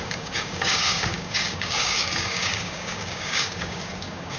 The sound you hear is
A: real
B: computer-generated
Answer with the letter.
B